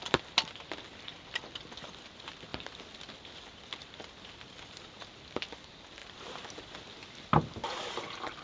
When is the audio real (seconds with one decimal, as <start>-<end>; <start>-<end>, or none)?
0.0-8.4